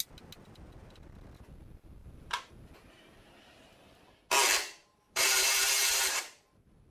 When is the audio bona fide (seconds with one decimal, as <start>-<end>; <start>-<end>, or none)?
0.0-2.0; 3.6-4.8

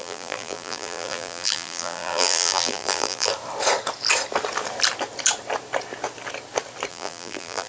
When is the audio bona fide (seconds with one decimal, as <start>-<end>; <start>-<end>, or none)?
3.3-6.9